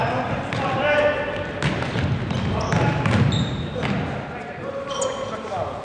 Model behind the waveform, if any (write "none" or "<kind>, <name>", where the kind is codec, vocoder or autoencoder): none